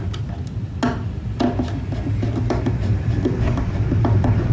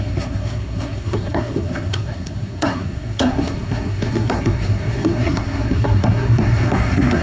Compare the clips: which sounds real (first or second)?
first